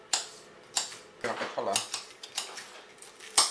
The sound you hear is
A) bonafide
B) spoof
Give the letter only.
A